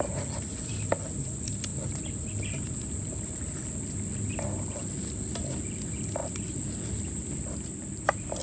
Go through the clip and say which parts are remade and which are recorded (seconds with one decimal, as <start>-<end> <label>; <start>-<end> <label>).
0.0-8.4 recorded